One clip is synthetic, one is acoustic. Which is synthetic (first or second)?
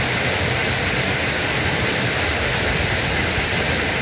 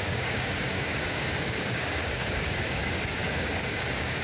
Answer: second